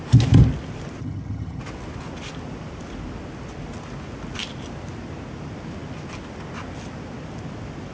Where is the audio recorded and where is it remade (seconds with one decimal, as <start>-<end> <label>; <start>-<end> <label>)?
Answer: 0.0-1.0 recorded; 1.0-1.6 remade; 1.6-7.9 recorded